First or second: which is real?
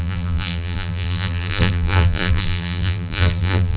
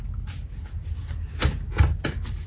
second